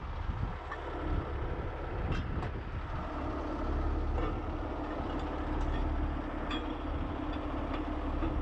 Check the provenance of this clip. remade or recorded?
recorded